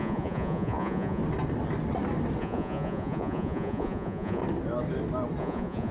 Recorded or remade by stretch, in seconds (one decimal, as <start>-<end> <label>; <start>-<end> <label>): 0.0-1.2 remade; 1.2-2.4 recorded; 2.4-4.4 remade; 4.4-5.4 recorded; 5.4-5.9 remade

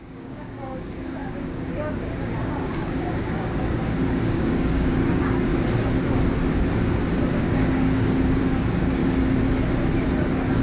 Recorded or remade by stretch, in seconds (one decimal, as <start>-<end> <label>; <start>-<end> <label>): 0.0-5.5 remade; 5.5-7.4 recorded; 7.4-9.0 remade; 9.0-10.6 recorded

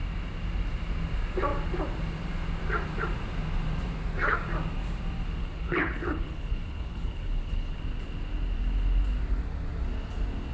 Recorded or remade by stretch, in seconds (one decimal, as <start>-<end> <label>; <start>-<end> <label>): 0.0-5.4 recorded; 5.4-7.8 remade; 7.8-10.5 recorded

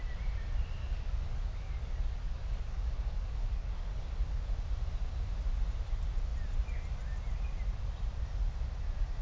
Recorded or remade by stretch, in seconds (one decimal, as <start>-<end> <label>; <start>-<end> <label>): 0.0-0.8 recorded; 0.8-4.5 remade; 4.5-9.2 recorded

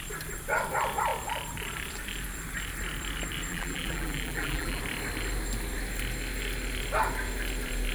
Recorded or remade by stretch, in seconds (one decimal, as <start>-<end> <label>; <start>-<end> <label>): 0.0-3.5 recorded; 3.5-4.8 remade; 4.8-7.9 recorded

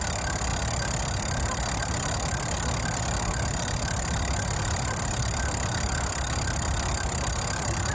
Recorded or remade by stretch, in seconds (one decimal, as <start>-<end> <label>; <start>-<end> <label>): 0.0-7.9 recorded

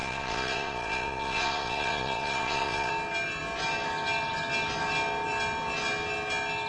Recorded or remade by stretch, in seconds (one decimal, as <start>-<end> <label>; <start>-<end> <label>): 0.0-2.9 remade; 2.9-6.7 recorded

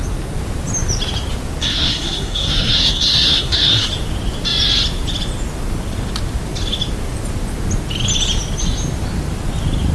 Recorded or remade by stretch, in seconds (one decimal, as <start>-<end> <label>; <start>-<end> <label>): 0.0-1.6 recorded; 1.6-3.9 remade; 3.9-9.9 recorded